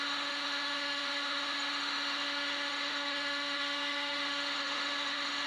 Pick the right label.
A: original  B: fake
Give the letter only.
B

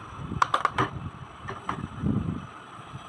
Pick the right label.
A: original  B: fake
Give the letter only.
A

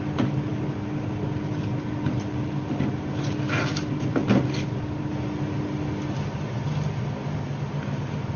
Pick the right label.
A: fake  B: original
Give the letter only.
B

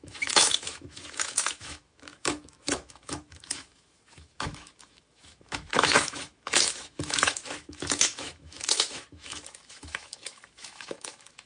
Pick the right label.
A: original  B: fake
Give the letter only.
B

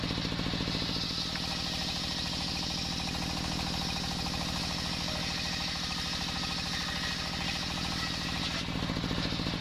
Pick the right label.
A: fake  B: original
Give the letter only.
B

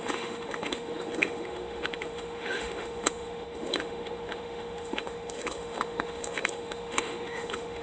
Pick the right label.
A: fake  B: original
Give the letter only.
A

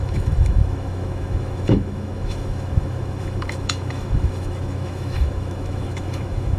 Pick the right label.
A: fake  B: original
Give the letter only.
A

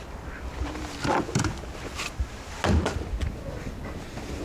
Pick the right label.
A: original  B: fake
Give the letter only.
A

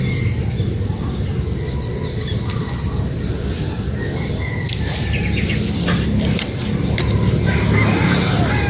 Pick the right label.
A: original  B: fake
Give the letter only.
A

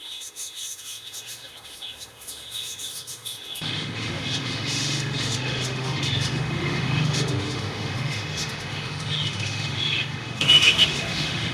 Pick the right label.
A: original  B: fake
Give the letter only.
B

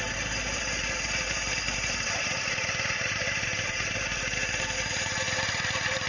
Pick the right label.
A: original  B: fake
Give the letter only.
A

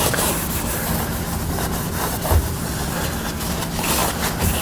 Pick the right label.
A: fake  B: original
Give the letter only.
B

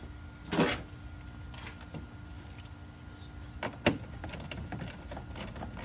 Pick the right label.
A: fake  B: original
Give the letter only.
B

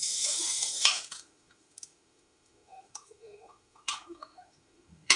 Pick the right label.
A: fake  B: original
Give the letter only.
A